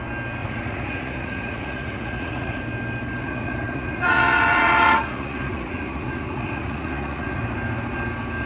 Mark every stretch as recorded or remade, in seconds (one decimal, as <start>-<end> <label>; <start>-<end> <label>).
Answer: 0.0-0.4 recorded; 0.4-2.6 remade; 2.6-3.2 recorded; 3.2-7.4 remade; 7.4-8.5 recorded

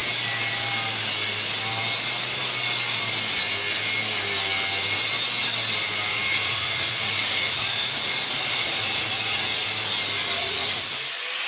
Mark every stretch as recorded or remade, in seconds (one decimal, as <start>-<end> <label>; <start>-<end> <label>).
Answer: 0.0-6.1 recorded; 6.1-9.7 remade; 9.7-10.4 recorded; 10.4-10.9 remade; 10.9-11.5 recorded